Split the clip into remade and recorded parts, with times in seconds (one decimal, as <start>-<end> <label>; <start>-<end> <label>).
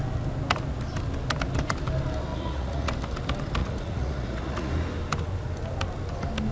0.0-2.3 recorded; 2.3-2.9 remade; 2.9-3.6 recorded; 3.6-4.7 remade; 4.7-6.5 recorded